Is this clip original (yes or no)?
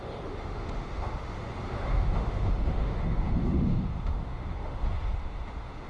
no